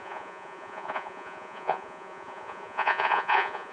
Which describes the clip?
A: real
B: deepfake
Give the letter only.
B